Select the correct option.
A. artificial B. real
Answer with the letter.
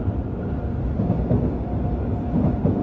B